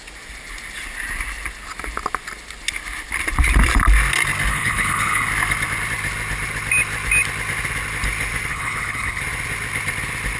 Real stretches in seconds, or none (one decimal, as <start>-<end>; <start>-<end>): 0.0-4.5; 5.3-8.5; 9.2-10.4